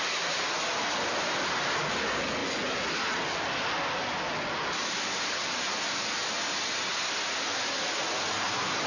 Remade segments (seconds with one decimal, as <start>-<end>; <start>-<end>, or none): none